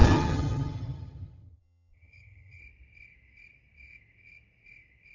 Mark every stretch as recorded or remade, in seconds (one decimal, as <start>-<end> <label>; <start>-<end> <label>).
0.0-2.6 remade; 2.6-5.1 recorded